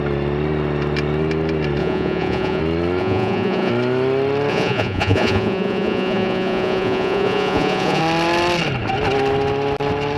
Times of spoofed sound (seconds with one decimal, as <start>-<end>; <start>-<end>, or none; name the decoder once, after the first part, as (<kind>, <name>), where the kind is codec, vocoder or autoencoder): 1.8-2.6 (vocoder, Vocos); 3.0-3.7; 4.5-8.0